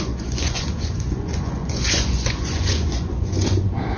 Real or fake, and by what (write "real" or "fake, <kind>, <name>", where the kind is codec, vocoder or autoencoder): fake, vocoder, Vocos